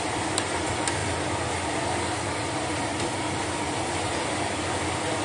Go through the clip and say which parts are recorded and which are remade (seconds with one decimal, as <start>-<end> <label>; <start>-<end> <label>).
0.0-5.2 recorded